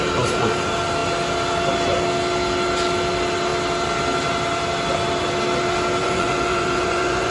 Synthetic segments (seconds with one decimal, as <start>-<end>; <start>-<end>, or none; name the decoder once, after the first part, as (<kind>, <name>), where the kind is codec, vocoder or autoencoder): 6.0-7.3 (vocoder, Vocos)